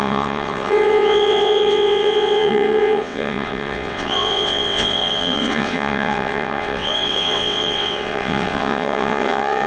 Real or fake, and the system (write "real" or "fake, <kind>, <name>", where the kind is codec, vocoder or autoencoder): fake, vocoder, WaveNeXt